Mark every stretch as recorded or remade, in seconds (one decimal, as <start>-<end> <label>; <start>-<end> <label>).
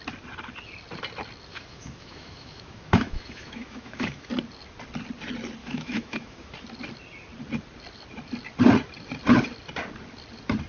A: 0.0-1.5 recorded; 1.5-4.3 remade; 4.3-5.6 recorded; 5.6-6.5 remade; 6.5-10.7 recorded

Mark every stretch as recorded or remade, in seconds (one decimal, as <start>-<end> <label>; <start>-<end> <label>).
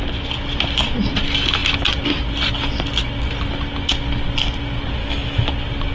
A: 0.0-5.0 recorded; 5.0-5.5 remade; 5.5-5.9 recorded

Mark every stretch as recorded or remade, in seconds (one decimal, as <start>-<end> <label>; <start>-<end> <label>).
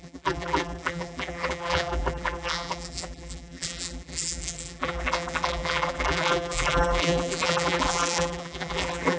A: 0.0-9.2 remade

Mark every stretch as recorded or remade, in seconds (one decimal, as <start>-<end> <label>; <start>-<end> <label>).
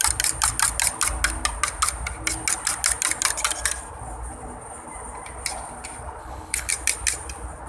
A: 0.0-6.2 recorded; 6.2-6.7 remade; 6.7-7.7 recorded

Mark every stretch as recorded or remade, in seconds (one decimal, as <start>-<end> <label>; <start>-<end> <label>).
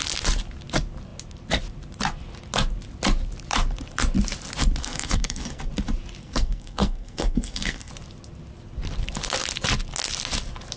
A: 0.0-4.8 recorded; 4.8-5.7 remade; 5.7-6.2 recorded; 6.2-7.9 remade; 7.9-10.8 recorded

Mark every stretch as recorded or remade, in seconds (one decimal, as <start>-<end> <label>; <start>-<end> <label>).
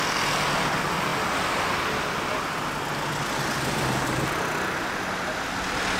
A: 0.0-6.0 recorded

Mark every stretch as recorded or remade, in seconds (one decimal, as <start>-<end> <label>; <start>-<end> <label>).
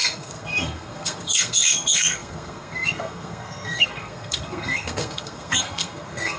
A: 0.0-6.4 remade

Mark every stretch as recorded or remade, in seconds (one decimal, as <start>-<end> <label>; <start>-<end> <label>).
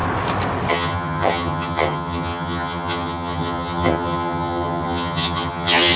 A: 0.0-0.7 recorded; 0.7-6.0 remade